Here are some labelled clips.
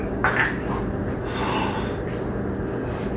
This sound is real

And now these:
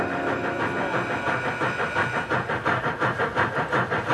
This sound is real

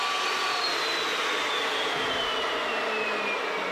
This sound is real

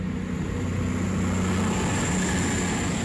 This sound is real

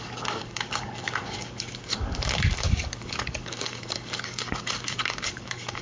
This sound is fake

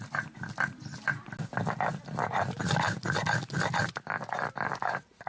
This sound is real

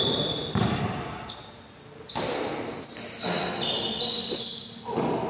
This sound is real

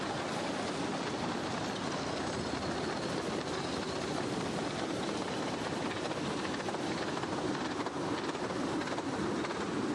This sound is real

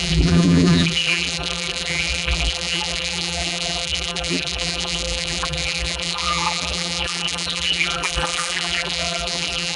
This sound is fake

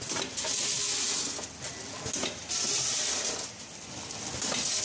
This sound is real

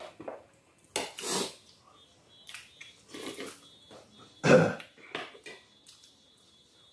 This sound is real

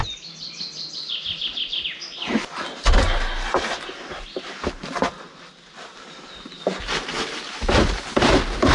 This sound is real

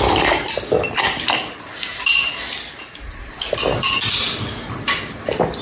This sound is real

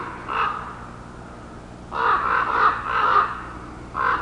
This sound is real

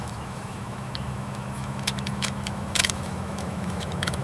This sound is fake